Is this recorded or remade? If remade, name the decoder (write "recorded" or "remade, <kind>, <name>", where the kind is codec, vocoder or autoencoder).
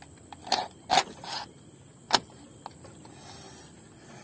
recorded